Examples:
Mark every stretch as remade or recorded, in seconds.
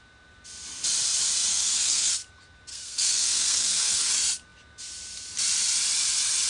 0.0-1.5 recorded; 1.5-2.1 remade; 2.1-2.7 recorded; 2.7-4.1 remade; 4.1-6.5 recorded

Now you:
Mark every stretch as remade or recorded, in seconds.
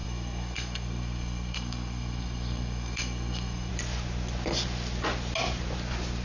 0.0-3.7 remade; 3.7-6.2 recorded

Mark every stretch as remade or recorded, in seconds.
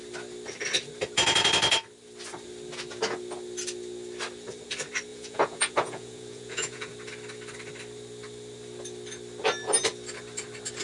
0.0-5.1 recorded; 5.1-6.9 remade; 6.9-10.8 recorded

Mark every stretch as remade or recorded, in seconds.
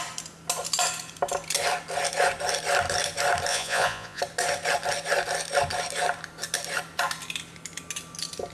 0.0-3.5 recorded; 3.5-4.2 remade; 4.2-8.5 recorded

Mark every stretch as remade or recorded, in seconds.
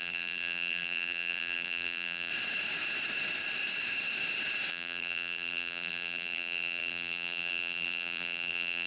0.0-2.3 remade; 2.3-4.7 recorded; 4.7-8.9 remade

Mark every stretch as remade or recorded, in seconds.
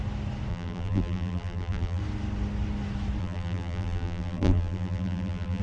0.0-0.5 recorded; 0.5-2.0 remade; 2.0-3.2 recorded; 3.2-5.6 remade